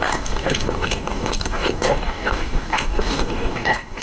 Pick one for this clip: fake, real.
fake